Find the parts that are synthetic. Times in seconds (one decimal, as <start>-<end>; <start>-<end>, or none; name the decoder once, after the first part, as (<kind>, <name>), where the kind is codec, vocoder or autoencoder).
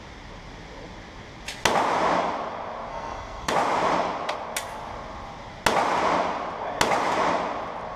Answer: 2.9-3.5 (codec, SNAC)